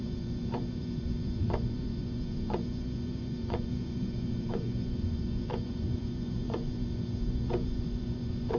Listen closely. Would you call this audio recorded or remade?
remade